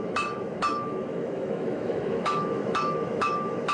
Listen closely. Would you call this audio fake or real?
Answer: fake